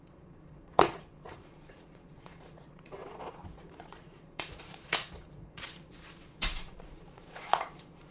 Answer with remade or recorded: remade